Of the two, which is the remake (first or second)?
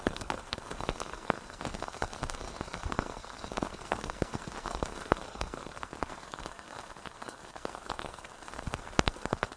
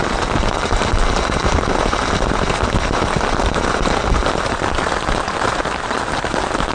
first